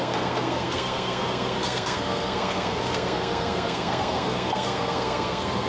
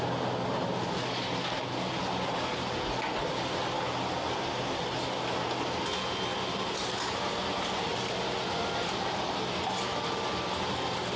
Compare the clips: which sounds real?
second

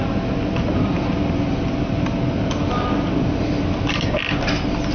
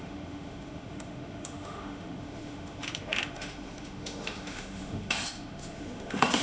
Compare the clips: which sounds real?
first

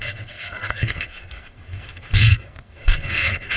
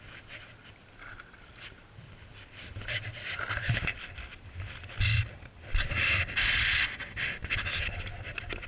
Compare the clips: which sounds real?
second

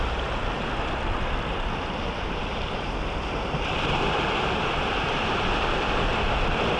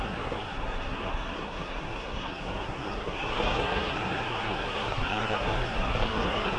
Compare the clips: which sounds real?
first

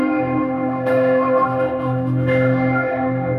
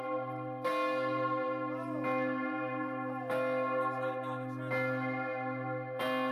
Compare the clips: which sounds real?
second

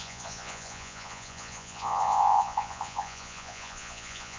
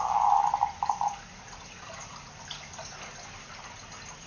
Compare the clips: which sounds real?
second